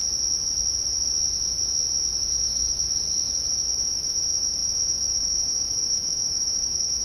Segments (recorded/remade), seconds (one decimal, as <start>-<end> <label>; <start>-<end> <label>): 0.0-2.3 recorded; 2.3-2.8 remade; 2.8-3.5 recorded; 3.5-7.0 remade